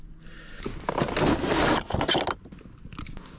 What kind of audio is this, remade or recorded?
recorded